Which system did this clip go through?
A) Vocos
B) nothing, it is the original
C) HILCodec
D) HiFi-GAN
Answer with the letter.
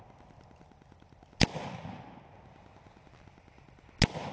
B